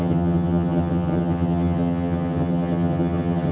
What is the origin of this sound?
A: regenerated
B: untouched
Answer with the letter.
A